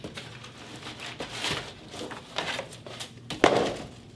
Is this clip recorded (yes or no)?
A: yes